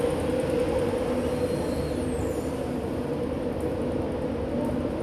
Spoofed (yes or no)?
no